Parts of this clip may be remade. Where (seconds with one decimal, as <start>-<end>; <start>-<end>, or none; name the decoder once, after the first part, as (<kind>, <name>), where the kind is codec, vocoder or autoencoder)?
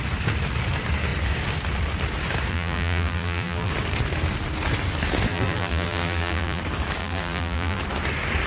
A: 2.5-3.7 (vocoder, BigVGAN v2); 5.3-6.6; 7.0-7.8